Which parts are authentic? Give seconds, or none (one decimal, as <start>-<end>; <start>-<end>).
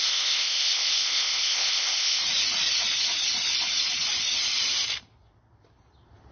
2.2-6.3